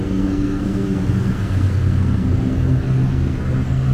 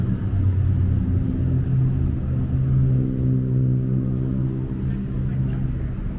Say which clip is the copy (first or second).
first